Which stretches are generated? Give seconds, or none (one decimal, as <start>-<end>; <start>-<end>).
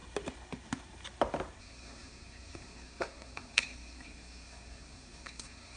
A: 1.6-5.8